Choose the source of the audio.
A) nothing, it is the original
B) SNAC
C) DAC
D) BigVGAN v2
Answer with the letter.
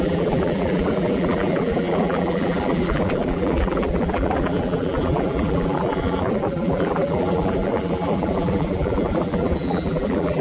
D